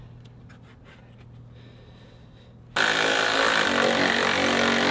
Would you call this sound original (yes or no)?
yes